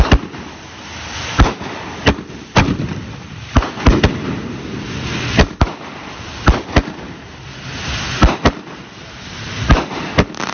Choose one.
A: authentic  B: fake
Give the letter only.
A